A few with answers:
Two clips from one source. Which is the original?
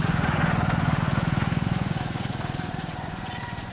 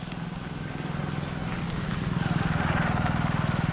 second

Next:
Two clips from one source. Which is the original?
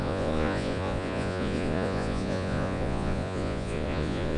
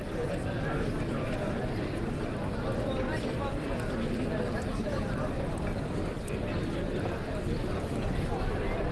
second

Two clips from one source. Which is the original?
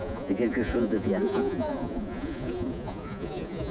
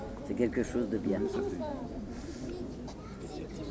second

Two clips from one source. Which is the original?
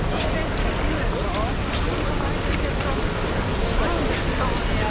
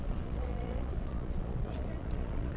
first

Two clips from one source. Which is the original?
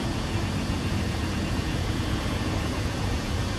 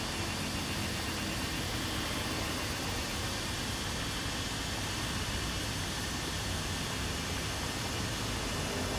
second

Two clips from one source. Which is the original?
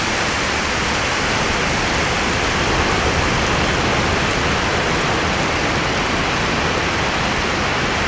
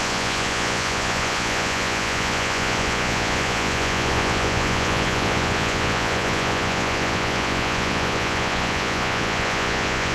first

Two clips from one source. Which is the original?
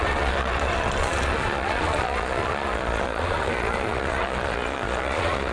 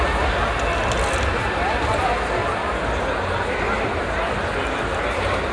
second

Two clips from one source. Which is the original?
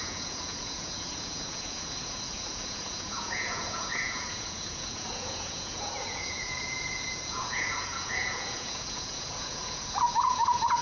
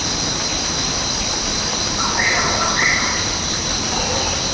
second